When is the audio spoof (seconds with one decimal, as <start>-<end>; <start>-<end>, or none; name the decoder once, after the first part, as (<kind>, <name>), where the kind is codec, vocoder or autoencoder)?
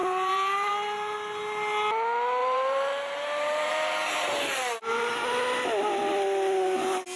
0.0-0.7 (vocoder, BigVGAN v2); 2.4-3.7